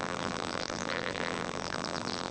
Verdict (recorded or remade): remade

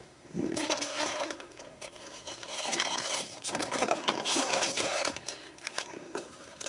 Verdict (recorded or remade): remade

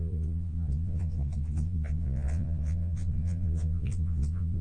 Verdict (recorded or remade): remade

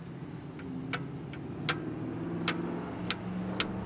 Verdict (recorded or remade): recorded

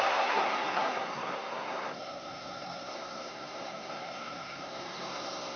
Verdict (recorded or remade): remade